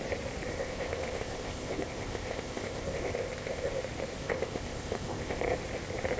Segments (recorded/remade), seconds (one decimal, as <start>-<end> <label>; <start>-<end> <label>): 0.0-0.5 recorded; 0.5-3.8 remade; 3.8-4.2 recorded; 4.2-5.4 remade; 5.4-6.2 recorded

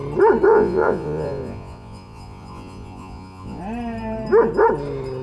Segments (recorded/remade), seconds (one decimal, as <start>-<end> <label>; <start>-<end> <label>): 0.0-0.5 recorded; 0.5-3.6 remade; 3.6-5.2 recorded

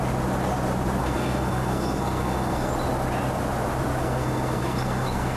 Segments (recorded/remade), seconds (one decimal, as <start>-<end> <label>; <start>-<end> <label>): 0.0-1.0 recorded; 1.0-2.7 remade; 2.7-4.0 recorded; 4.0-5.4 remade

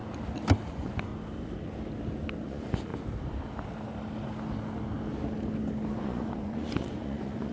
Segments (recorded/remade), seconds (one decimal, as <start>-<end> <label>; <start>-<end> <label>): 0.0-0.7 recorded; 0.7-1.1 remade; 1.1-2.4 recorded; 2.4-2.9 remade; 2.9-5.9 recorded; 5.9-7.5 remade

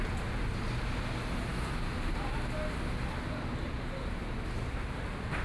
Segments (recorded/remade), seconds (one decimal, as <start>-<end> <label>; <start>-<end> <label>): 0.0-5.4 recorded

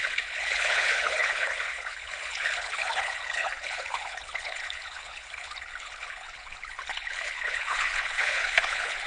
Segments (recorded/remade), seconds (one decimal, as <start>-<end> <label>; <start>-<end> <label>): 0.0-9.1 remade